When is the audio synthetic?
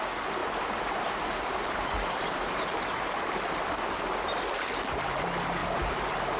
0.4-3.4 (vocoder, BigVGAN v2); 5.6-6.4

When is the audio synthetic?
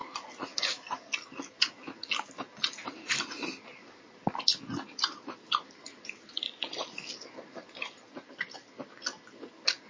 0.0-1.1 (vocoder, BigVGAN v2); 2.8-8.0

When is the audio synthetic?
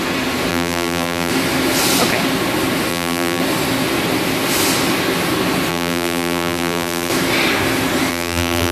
0.5-1.3 (vocoder, BigVGAN v2); 2.9-3.4; 5.7-7.1; 8.1-8.7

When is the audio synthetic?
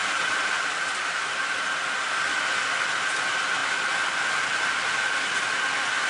0.0-0.8 (vocoder, BigVGAN v2)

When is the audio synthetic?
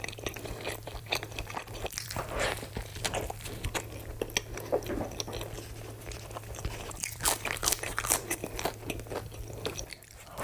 0.0-2.9 (vocoder, BigVGAN v2); 6.0-10.4